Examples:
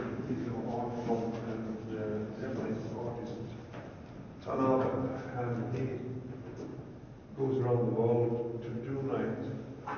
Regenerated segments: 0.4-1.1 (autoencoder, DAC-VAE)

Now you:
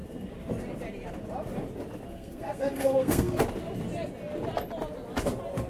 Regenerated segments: 2.1-3.4 (codec, SNAC)

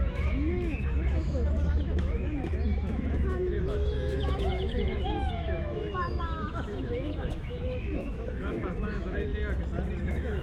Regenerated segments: 0.0-9.3 (autoencoder, DAC-VAE); 10.0-10.4

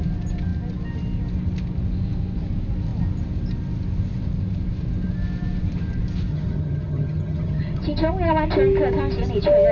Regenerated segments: 6.3-7.8 (vocoder, HiFi-GAN)

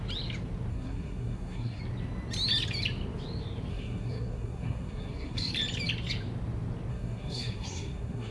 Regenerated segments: 0.7-1.8 (codec, SNAC); 3.7-5.5; 6.9-8.3

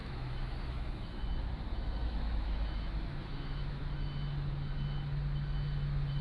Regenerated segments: 0.0-1.2 (autoencoder, DAC-VAE); 1.7-3.8